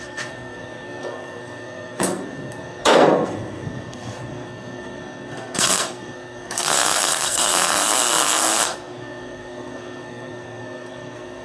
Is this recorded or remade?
remade